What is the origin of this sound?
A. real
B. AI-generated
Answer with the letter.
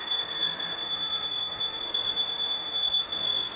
B